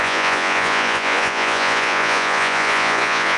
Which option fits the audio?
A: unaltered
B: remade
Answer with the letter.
B